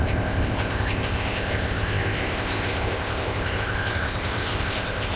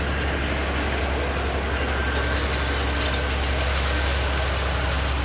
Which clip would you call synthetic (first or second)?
first